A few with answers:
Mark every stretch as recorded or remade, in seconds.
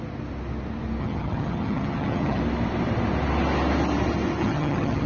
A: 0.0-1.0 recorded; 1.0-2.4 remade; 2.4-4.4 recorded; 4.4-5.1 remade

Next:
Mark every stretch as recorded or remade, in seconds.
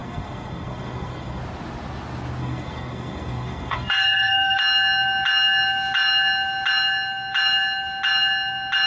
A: 0.0-1.4 remade; 1.4-2.4 recorded; 2.4-4.6 remade; 4.6-8.9 recorded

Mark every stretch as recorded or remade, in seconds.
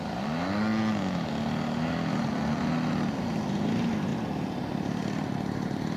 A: 0.0-4.1 recorded; 4.1-4.7 remade; 4.7-6.0 recorded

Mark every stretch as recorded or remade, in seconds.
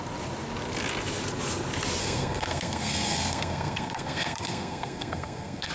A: 0.0-2.0 recorded; 2.0-5.7 remade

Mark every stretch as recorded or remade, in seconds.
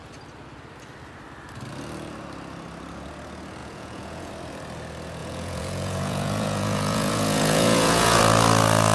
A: 0.0-3.6 recorded; 3.6-4.3 remade; 4.3-5.2 recorded; 5.2-8.2 remade; 8.2-8.9 recorded